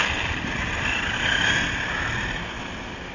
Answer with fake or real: real